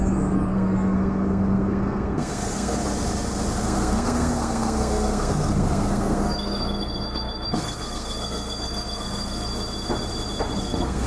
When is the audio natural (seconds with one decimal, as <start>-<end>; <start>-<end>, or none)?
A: 2.9-3.6; 9.5-10.6